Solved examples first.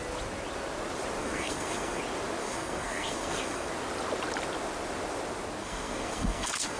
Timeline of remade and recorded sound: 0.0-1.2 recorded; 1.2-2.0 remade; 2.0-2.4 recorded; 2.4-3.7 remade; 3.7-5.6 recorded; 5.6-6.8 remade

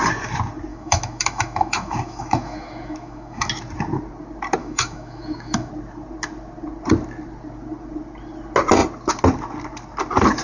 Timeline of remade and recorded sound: 0.0-0.7 recorded; 0.7-3.5 remade; 3.5-4.6 recorded; 4.6-5.7 remade; 5.7-10.4 recorded

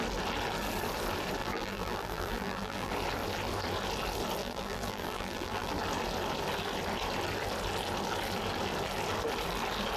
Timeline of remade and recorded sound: 0.0-1.4 recorded; 1.4-2.9 remade; 2.9-4.4 recorded; 4.4-5.7 remade; 5.7-10.0 recorded

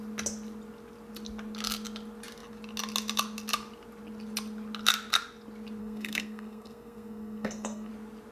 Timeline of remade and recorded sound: 0.0-5.8 recorded; 5.8-7.9 remade; 7.9-8.3 recorded

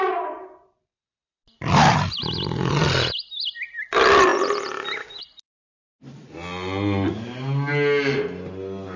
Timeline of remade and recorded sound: 0.0-9.0 recorded

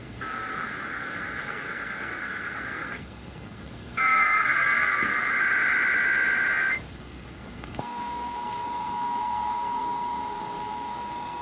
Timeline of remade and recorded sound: 0.0-5.1 remade; 5.1-6.9 recorded; 6.9-11.4 remade

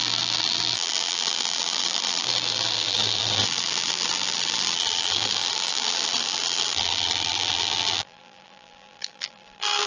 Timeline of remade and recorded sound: 0.0-9.9 remade

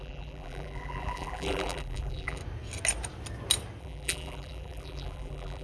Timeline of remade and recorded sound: 0.0-2.4 remade; 2.4-3.8 recorded; 3.8-5.6 remade